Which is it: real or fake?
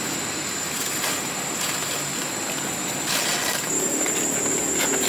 real